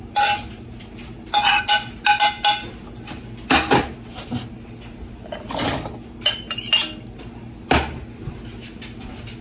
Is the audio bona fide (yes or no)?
yes